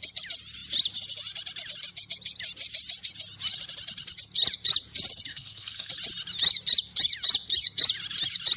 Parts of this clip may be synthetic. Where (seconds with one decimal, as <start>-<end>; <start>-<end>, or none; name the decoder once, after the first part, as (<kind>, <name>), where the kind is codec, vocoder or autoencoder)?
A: 5.3-5.9 (codec, SNAC)